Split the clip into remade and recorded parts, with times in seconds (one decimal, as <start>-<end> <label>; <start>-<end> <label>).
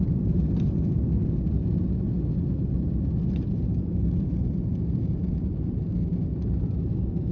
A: 0.0-7.3 recorded